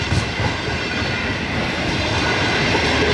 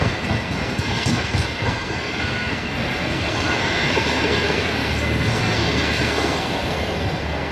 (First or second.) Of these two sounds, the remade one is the second